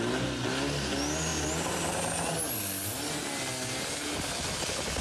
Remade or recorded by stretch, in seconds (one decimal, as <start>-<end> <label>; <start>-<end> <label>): 0.0-5.0 recorded